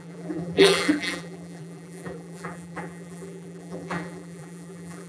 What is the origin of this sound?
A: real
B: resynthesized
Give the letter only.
B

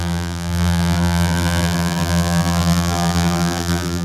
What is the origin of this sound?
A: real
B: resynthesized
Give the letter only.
B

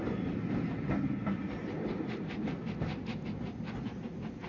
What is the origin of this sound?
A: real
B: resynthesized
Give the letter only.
A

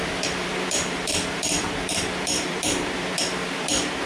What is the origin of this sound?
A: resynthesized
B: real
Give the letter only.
A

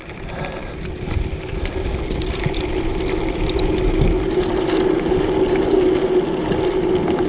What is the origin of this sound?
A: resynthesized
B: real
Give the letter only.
B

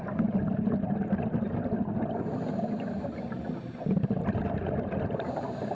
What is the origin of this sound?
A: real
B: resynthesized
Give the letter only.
A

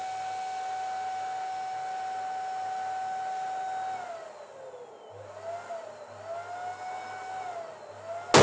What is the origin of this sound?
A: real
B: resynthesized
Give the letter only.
A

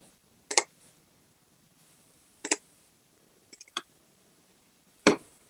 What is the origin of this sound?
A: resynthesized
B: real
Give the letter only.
A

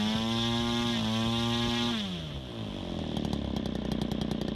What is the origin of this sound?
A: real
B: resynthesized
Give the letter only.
A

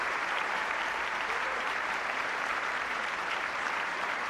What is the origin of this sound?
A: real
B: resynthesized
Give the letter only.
B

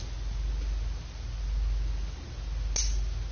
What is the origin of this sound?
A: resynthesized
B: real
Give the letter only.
B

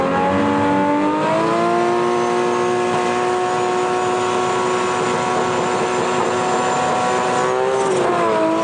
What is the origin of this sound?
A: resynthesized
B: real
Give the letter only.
B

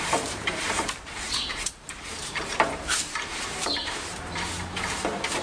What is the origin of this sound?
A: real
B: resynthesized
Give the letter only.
B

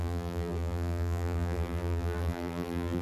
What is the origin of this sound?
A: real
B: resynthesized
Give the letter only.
B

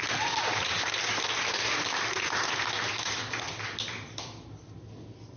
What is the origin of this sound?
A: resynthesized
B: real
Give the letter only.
B